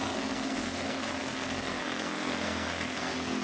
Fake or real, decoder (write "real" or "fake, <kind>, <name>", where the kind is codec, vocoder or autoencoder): fake, codec, SNAC